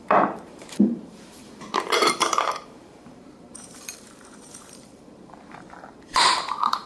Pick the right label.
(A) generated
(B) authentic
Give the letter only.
A